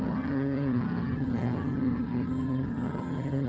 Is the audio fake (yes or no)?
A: yes